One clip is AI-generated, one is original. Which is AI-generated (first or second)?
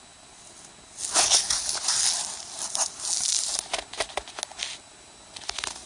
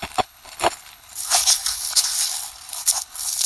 second